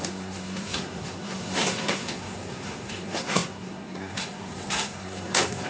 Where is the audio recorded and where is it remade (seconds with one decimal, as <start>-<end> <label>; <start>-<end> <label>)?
0.0-5.7 remade

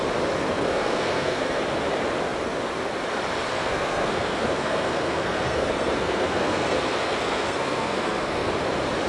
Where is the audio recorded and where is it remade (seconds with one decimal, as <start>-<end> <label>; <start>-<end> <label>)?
0.0-0.5 recorded; 0.5-1.6 remade; 1.6-3.5 recorded; 3.5-8.5 remade; 8.5-9.1 recorded